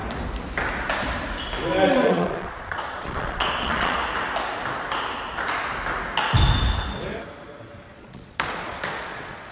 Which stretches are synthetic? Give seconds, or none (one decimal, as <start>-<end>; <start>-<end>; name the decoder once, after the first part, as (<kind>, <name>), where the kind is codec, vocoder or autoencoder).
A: 1.9-4.0 (vocoder, Vocos); 7.9-9.5